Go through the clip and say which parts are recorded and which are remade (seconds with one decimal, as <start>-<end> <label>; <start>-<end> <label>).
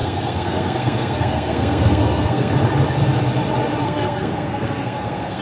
0.0-2.5 remade; 2.5-3.8 recorded; 3.8-5.4 remade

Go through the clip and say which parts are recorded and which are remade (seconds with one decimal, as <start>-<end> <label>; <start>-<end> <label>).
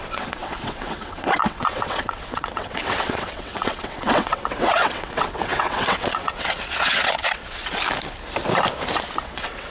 0.0-7.6 remade; 7.6-9.2 recorded; 9.2-9.7 remade